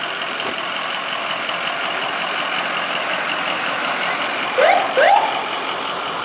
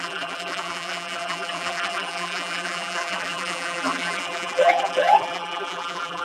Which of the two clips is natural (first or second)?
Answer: first